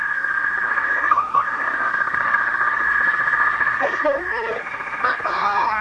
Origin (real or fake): fake